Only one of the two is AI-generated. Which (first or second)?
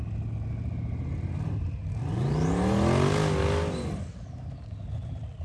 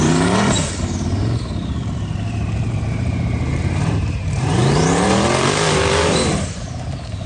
second